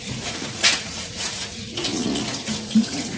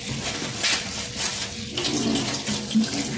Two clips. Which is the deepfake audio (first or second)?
first